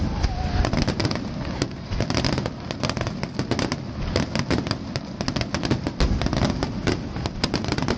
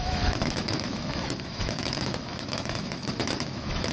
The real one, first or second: first